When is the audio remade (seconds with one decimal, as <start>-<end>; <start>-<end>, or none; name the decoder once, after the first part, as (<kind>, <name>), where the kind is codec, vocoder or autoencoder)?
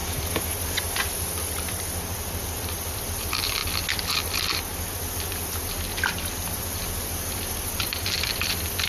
1.0-3.6 (vocoder, BigVGAN v2); 6.5-8.9